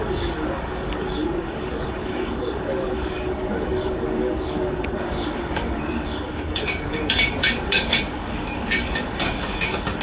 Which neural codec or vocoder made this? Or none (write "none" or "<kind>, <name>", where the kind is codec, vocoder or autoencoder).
codec, DAC